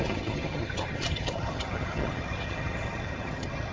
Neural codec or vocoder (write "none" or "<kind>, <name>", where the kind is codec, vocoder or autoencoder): vocoder, HiFi-GAN